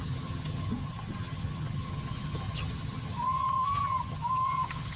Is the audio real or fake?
fake